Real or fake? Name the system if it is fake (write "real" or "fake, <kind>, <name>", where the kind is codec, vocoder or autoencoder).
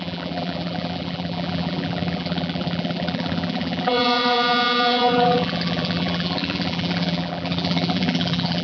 fake, vocoder, BigVGAN v2